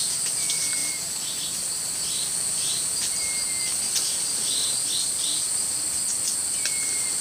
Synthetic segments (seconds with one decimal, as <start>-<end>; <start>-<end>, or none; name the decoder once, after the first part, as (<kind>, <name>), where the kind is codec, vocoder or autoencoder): 0.8-1.6 (vocoder, BigVGAN v2); 3.7-5.7; 6.4-7.2